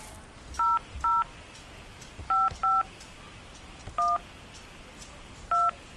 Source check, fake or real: real